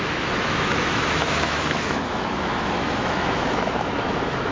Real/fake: fake